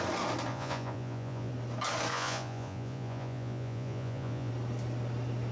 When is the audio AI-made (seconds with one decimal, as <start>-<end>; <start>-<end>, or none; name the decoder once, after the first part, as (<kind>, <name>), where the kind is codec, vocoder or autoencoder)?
0.5-1.5 (vocoder, Vocos); 2.1-4.5